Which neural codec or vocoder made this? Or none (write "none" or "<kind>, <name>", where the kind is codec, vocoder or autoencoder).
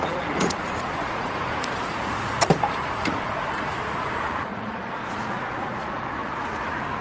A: vocoder, Vocos